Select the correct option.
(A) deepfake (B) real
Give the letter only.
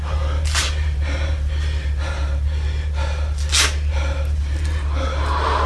B